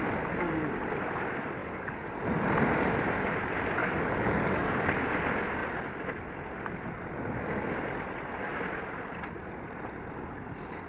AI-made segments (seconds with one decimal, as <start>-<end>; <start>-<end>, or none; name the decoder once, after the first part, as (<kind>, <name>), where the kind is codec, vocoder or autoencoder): 1.6-2.2 (codec, DAC); 3.8-4.9